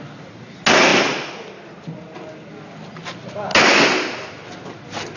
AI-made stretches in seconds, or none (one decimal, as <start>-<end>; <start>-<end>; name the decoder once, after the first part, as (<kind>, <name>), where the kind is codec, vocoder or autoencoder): none